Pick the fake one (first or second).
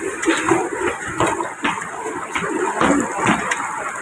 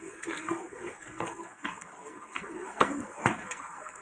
second